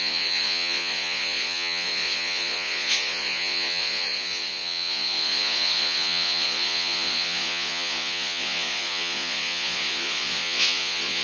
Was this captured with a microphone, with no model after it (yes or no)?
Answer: no